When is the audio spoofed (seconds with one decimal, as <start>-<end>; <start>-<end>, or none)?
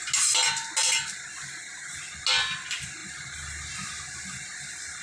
none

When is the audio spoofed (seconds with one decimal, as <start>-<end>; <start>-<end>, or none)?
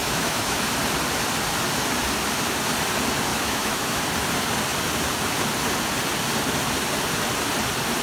0.0-0.6; 3.3-4.0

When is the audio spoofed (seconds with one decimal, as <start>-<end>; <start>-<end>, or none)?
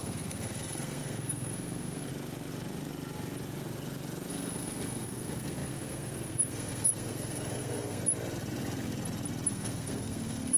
0.0-2.1; 4.3-8.0; 9.5-10.6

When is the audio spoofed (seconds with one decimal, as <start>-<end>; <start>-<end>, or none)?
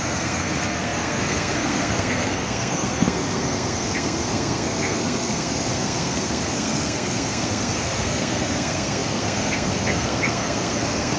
0.0-11.2